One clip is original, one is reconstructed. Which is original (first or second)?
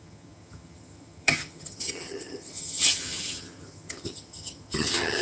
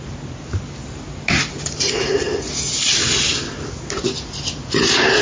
second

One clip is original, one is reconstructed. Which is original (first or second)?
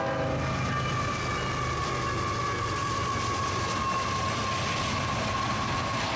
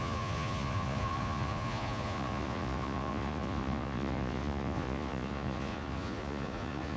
first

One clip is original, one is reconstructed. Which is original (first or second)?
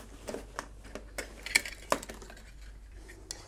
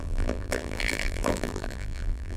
first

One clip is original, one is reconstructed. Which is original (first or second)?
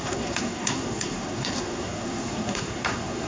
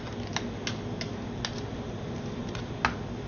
second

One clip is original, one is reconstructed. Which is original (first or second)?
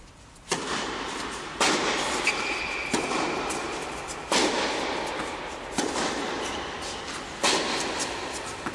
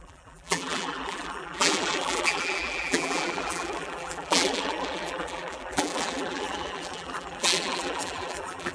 first